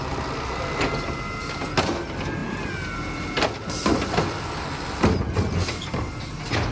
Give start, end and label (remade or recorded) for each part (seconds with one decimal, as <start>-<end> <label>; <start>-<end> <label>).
0.0-6.7 recorded